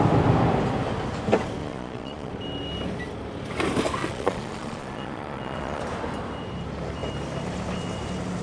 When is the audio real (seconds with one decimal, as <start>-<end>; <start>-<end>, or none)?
0.0-1.6; 2.3-4.0; 5.8-8.4